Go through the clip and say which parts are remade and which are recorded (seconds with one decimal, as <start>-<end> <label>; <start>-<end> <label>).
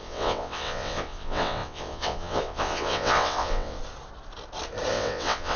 0.0-3.8 remade; 3.8-4.9 recorded; 4.9-5.6 remade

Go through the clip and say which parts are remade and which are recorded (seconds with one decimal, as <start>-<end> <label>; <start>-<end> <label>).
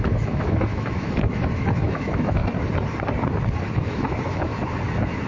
0.0-2.4 remade; 2.4-3.6 recorded; 3.6-4.5 remade; 4.5-5.3 recorded